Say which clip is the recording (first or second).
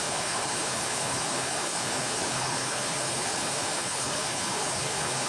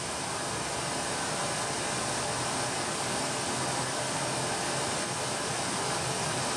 second